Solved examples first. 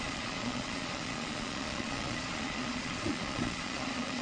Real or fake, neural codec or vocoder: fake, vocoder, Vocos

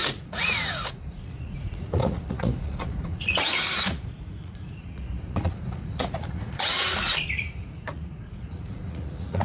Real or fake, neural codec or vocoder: fake, vocoder, Vocos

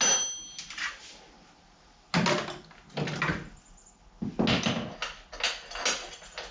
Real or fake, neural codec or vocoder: real